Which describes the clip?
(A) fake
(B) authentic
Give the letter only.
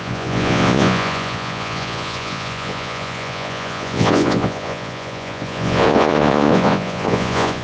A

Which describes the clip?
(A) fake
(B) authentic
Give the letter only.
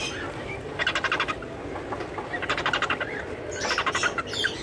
B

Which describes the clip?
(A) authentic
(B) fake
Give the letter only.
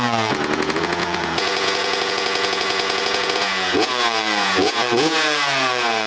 B